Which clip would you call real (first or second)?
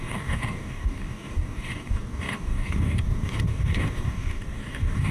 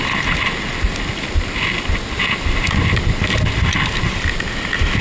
second